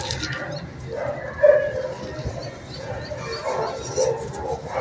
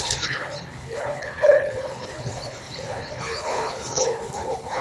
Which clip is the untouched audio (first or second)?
first